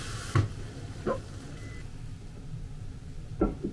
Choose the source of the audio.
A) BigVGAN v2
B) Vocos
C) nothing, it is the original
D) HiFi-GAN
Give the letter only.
C